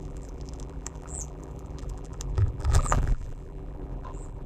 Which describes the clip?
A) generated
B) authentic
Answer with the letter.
A